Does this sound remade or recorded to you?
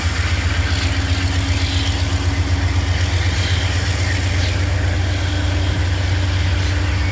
recorded